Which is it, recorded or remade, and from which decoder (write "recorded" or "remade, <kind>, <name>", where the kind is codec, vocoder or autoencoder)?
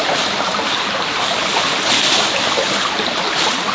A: recorded